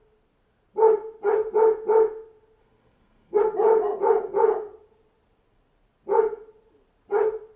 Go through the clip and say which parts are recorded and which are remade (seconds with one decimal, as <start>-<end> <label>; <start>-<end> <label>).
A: 0.0-2.6 recorded; 2.6-3.4 remade; 3.4-7.6 recorded